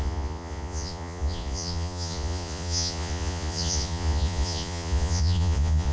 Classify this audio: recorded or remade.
remade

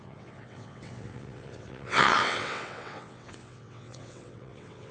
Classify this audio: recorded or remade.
remade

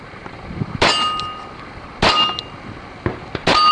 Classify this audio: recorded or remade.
recorded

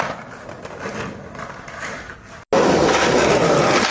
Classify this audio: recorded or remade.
recorded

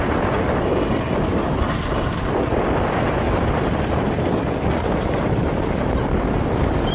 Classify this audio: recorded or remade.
recorded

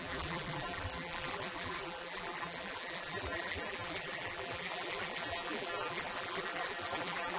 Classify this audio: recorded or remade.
remade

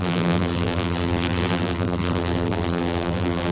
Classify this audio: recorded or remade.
remade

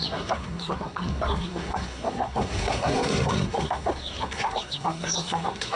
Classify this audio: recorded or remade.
remade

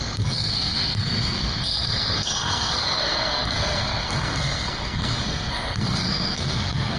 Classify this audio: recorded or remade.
remade